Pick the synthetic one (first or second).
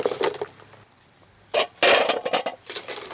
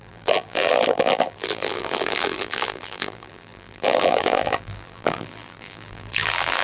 second